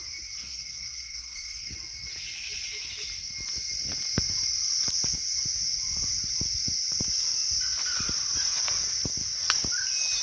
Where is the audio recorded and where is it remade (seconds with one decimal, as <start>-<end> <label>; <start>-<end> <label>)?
0.0-0.4 recorded; 0.4-1.7 remade; 1.7-10.2 recorded